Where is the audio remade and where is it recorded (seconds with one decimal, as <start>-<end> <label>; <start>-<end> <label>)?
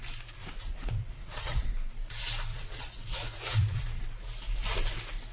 0.0-0.4 recorded; 0.4-1.7 remade; 1.7-2.5 recorded; 2.5-4.0 remade; 4.0-5.3 recorded